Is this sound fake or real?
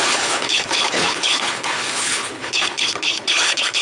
fake